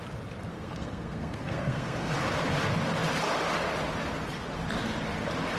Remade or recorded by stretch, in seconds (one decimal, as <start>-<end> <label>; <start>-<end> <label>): 0.0-0.5 recorded; 0.5-2.1 remade; 2.1-5.6 recorded